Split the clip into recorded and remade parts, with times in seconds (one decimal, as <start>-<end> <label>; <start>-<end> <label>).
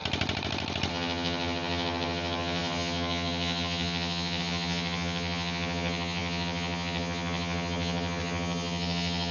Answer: 0.0-0.9 recorded; 0.9-9.3 remade